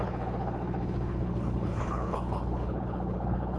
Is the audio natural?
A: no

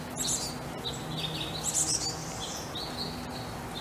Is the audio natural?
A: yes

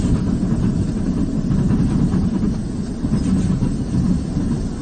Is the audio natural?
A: yes